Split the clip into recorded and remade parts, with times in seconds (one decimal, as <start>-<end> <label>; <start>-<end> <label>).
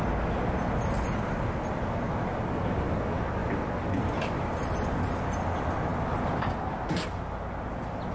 0.0-8.1 recorded